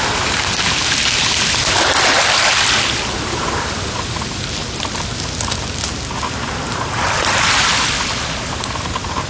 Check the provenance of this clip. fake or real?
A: real